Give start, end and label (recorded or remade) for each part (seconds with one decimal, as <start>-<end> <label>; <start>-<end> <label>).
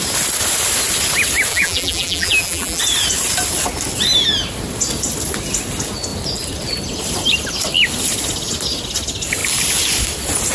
0.0-1.5 recorded; 1.5-2.8 remade; 2.8-10.5 recorded